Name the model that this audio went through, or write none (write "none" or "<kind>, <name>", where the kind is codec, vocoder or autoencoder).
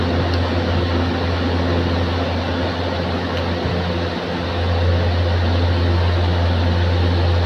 none